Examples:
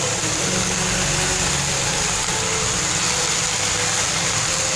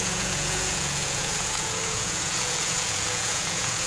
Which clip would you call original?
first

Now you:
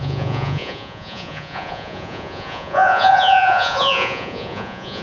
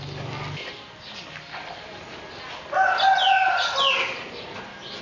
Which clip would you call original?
second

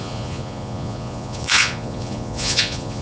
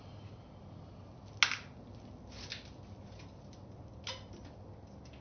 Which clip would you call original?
second